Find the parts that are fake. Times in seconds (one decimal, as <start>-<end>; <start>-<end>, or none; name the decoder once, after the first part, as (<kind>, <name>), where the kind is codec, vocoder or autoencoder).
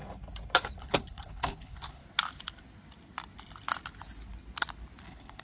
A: 0.8-2.0 (codec, HILCodec); 5.0-5.4